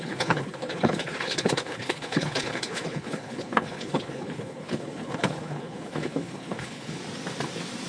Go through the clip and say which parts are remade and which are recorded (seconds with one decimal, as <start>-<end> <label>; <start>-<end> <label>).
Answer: 0.0-7.0 remade; 7.0-7.9 recorded